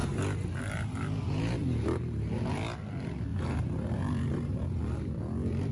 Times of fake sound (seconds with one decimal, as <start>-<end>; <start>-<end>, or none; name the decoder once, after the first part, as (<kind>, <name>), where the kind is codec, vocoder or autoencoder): 3.3-4.8 (vocoder, BigVGAN v2)